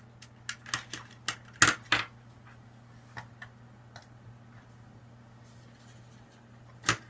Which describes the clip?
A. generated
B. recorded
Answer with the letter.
B